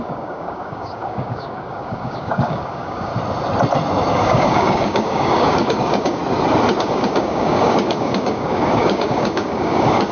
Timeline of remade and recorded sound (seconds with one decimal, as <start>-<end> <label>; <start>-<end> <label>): 0.0-3.1 remade; 3.1-4.1 recorded; 4.1-6.2 remade; 6.2-6.8 recorded; 6.8-10.1 remade